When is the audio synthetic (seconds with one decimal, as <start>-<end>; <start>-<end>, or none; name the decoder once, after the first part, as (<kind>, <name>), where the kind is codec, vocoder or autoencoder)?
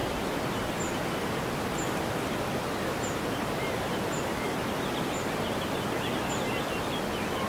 none